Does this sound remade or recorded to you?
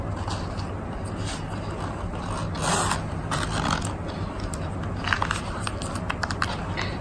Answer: recorded